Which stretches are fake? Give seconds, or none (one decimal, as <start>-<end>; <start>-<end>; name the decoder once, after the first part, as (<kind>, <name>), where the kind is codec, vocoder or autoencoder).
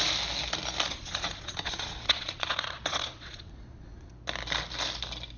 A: 0.9-4.1 (vocoder, Vocos)